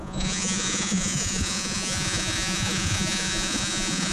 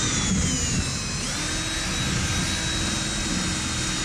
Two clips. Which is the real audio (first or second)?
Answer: second